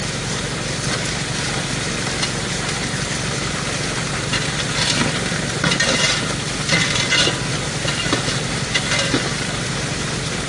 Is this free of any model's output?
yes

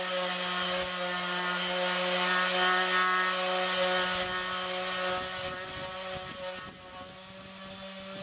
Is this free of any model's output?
yes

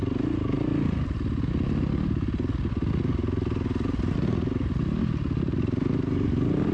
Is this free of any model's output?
yes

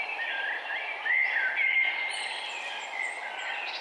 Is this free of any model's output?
no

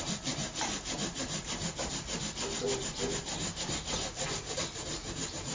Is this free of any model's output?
no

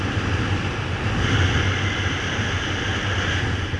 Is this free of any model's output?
yes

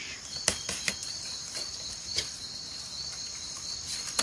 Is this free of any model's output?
no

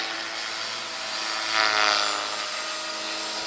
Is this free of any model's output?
yes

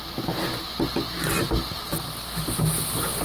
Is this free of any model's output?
yes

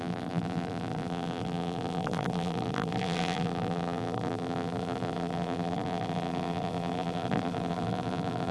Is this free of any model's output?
no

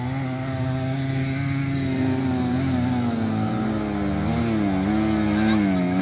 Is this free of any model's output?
yes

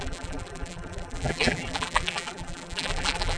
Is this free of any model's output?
no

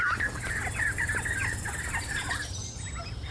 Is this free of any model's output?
yes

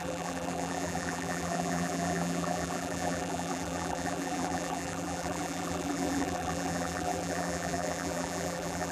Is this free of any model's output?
no